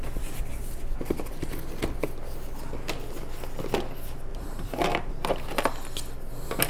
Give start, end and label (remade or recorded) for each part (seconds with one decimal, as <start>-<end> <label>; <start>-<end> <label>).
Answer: 0.0-4.3 recorded; 4.3-5.1 remade; 5.1-6.7 recorded

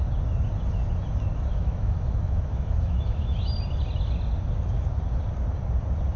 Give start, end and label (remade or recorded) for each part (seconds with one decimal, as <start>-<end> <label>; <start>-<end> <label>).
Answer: 0.0-1.5 recorded; 1.5-3.4 remade; 3.4-6.2 recorded